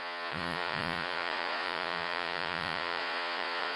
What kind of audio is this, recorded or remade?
remade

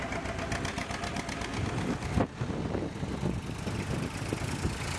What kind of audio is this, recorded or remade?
recorded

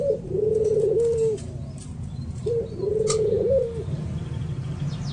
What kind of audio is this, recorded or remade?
remade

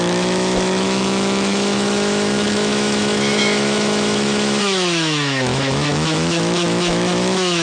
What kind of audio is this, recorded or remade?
remade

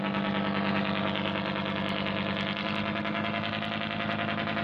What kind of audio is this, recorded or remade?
recorded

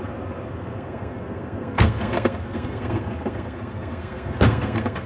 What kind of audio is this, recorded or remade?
remade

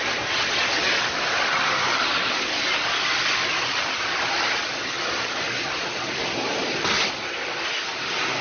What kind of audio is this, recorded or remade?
recorded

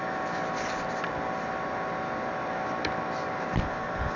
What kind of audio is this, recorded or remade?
recorded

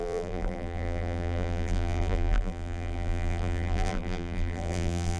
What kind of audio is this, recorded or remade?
remade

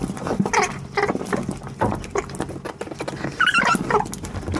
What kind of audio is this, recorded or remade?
recorded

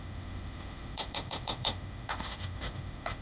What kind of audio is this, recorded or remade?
remade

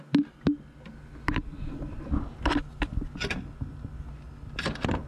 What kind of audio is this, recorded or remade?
recorded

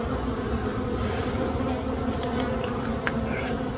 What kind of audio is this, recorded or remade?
recorded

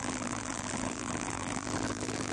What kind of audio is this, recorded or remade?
remade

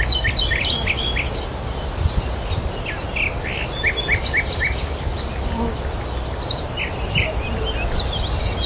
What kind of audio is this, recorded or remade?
recorded